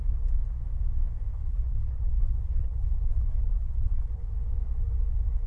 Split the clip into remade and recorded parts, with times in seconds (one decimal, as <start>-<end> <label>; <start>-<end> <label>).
0.0-1.3 recorded; 1.3-4.2 remade; 4.2-5.5 recorded